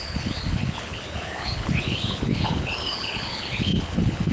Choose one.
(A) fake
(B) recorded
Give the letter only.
A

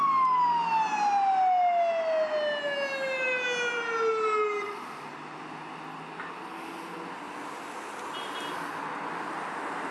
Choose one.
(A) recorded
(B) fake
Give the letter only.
A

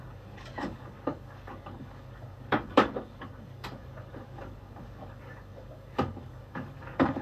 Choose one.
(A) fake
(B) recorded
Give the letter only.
A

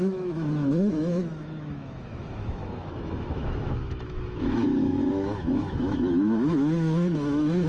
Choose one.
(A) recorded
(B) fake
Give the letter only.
B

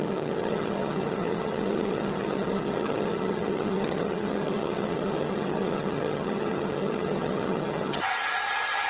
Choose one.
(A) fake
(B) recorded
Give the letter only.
A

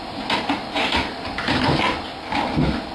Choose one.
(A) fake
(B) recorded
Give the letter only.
B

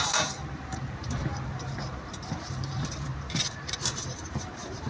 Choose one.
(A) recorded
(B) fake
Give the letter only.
B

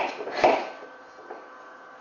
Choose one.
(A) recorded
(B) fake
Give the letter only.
A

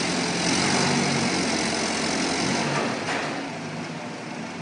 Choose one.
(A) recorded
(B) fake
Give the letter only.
A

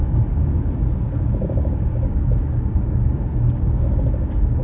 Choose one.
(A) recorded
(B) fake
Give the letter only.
B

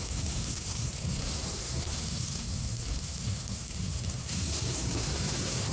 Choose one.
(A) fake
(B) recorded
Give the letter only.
A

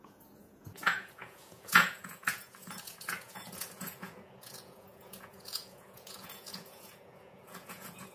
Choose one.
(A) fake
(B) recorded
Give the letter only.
A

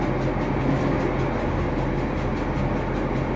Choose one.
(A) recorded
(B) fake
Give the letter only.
A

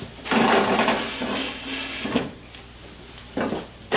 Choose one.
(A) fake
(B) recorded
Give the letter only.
B